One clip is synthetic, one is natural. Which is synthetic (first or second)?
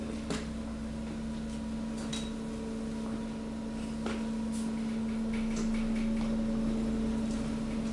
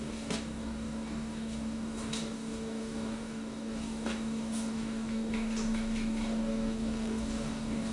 second